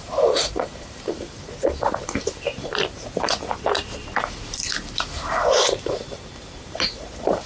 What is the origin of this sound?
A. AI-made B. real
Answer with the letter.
A